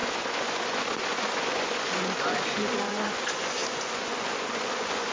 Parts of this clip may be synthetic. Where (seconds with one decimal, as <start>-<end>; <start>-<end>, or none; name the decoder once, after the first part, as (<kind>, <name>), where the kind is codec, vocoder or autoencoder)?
0.0-5.1 (vocoder, Vocos)